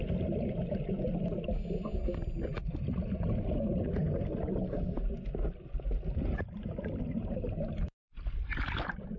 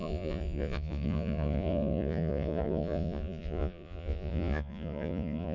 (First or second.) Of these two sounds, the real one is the first